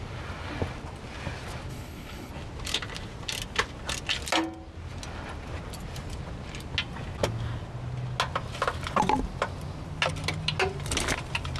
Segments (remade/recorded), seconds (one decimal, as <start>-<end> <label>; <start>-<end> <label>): 0.0-1.7 recorded; 1.7-2.3 remade; 2.3-11.6 recorded